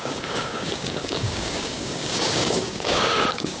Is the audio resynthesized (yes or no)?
yes